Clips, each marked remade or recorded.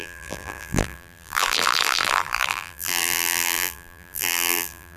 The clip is remade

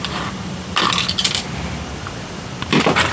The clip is remade